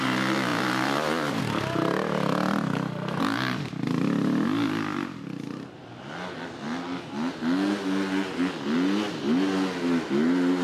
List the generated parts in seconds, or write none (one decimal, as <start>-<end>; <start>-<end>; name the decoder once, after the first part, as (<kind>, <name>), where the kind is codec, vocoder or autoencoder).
none